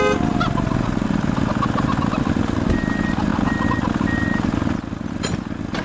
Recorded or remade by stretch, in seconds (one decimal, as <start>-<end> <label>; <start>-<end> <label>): 0.0-5.8 recorded